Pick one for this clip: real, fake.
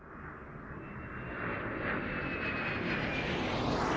real